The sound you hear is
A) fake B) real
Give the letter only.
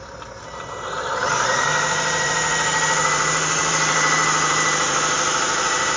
A